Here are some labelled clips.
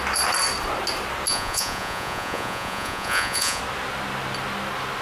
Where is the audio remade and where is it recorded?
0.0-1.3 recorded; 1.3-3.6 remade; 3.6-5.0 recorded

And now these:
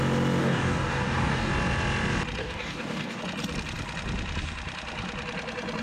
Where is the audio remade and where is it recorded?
0.0-0.4 recorded; 0.4-1.5 remade; 1.5-2.4 recorded; 2.4-3.2 remade; 3.2-5.8 recorded

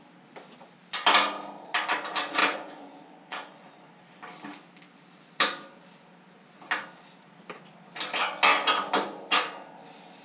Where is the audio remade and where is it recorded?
0.0-2.4 recorded; 2.4-3.9 remade; 3.9-10.2 recorded